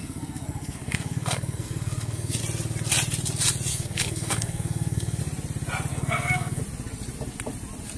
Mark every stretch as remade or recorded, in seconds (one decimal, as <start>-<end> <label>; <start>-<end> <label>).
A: 0.0-2.4 remade; 2.4-3.7 recorded; 3.7-5.2 remade; 5.2-5.9 recorded; 5.9-6.6 remade; 6.6-8.0 recorded